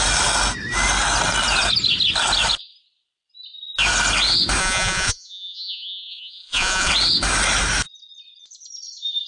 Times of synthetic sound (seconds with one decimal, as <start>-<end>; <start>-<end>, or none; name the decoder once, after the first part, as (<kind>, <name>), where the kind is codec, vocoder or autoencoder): 4.6-6.9 (vocoder, Vocos)